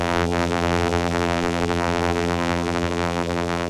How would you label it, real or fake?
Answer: fake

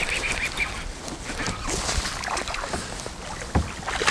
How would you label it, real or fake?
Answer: real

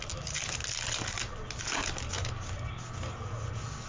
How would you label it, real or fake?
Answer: real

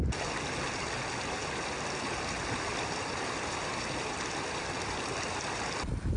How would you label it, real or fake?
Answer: real